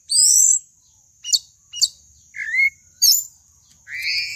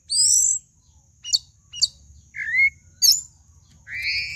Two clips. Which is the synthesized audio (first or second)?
first